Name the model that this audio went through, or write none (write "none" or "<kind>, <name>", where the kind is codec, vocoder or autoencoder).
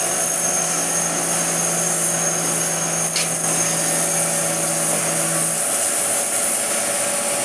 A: none